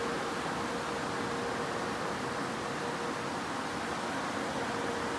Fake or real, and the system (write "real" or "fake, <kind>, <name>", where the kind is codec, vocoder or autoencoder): real